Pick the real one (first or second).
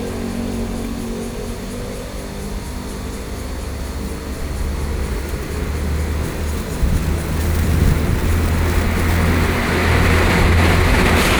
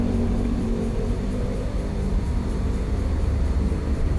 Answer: first